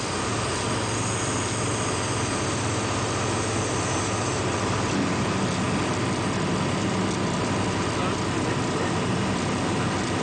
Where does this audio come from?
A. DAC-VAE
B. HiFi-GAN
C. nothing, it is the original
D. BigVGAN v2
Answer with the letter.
C